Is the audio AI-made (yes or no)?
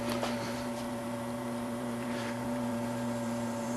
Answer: yes